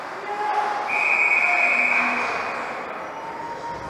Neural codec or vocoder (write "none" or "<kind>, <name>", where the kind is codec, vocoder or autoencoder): none